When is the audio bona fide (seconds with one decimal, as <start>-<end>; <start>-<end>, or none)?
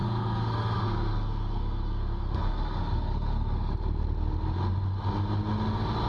3.7-6.1